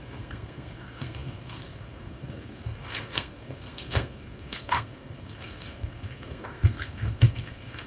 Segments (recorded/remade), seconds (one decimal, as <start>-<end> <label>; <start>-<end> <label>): 0.0-7.9 remade